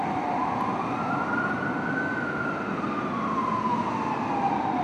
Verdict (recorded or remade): recorded